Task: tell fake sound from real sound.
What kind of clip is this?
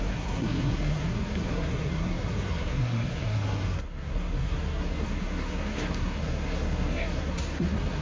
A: fake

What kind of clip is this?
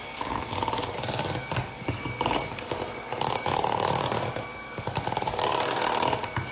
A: fake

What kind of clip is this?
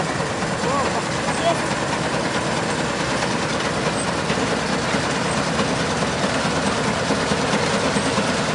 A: real